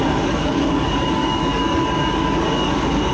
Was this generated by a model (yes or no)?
yes